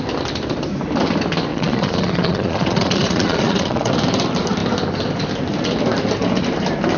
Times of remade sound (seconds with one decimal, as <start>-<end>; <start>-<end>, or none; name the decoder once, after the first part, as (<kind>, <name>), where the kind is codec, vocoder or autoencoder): 1.5-3.9 (vocoder, Vocos)